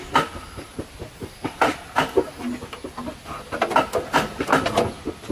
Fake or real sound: real